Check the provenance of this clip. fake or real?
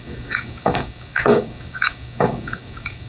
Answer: fake